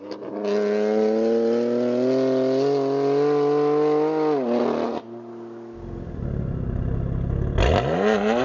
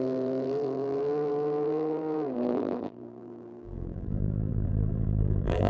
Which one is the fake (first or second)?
second